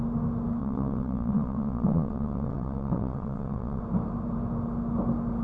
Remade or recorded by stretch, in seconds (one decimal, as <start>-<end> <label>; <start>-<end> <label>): 0.0-0.6 recorded; 0.6-3.8 remade; 3.8-5.4 recorded